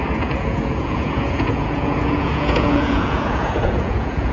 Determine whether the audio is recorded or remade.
remade